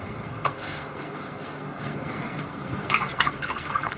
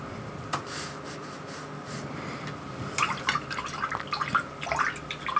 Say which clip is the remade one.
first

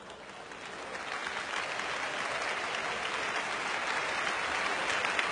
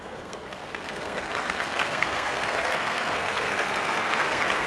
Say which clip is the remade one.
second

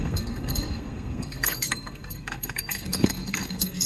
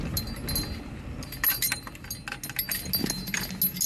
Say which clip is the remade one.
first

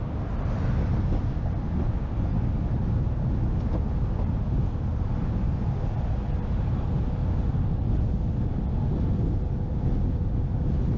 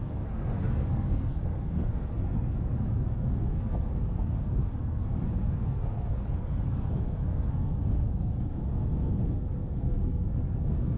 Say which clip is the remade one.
second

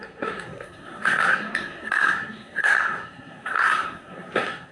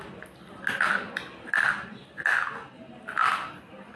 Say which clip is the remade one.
first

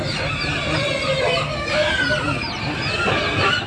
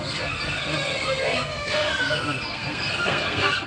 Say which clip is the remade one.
second